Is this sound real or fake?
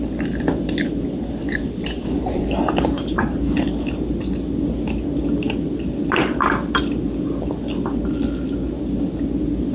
real